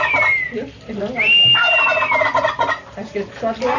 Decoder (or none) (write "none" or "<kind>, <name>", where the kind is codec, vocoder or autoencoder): none